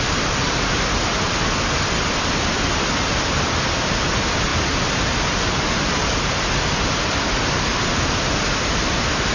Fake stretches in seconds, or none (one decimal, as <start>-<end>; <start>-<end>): none